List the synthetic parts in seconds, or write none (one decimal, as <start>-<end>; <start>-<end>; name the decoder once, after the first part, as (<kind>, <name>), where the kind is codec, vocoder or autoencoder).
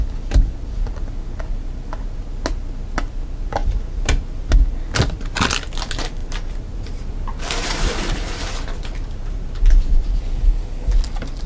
3.6-4.5 (vocoder, BigVGAN v2); 6.2-10.2